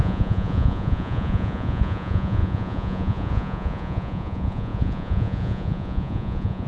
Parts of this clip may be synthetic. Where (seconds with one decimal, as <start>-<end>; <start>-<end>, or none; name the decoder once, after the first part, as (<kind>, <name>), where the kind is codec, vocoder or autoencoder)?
0.0-6.7 (vocoder, Vocos)